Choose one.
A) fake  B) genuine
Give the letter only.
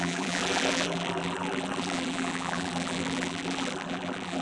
A